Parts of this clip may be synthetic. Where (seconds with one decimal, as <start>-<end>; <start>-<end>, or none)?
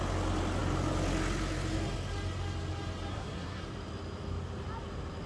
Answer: 3.1-3.6